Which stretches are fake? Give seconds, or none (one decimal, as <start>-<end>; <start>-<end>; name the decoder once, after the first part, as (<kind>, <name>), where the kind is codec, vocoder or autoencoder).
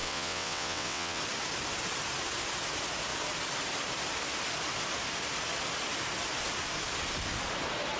0.0-1.2 (vocoder, WaveNeXt)